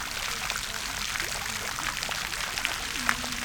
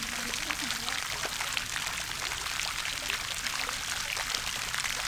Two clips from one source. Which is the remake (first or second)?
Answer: second